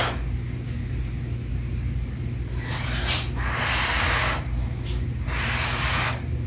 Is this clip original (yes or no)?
yes